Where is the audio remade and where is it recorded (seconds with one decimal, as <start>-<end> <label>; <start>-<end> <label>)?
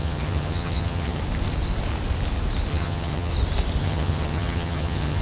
0.0-1.2 remade; 1.2-2.7 recorded; 2.7-3.3 remade; 3.3-3.8 recorded; 3.8-5.2 remade